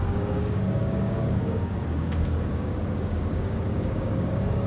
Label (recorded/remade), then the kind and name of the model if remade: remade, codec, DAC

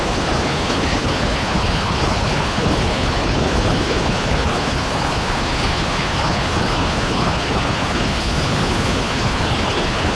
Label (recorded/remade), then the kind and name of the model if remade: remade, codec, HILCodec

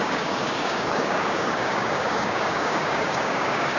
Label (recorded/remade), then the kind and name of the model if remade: remade, codec, DAC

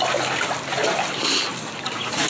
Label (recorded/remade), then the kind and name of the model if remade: recorded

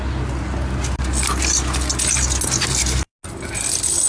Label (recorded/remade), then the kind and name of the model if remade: recorded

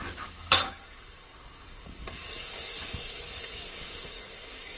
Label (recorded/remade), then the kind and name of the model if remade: remade, codec, DAC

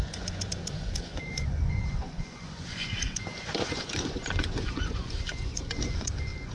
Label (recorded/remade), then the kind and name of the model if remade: remade, vocoder, Vocos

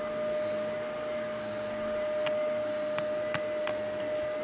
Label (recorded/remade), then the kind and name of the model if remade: recorded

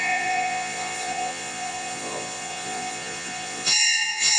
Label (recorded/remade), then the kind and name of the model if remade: remade, vocoder, Vocos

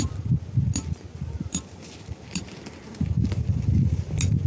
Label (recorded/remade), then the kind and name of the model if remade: recorded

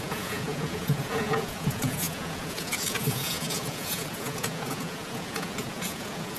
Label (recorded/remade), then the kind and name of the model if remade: remade, vocoder, Vocos